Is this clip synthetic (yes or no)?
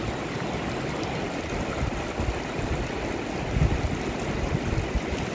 no